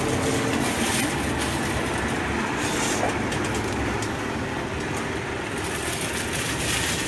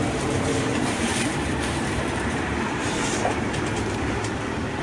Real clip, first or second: first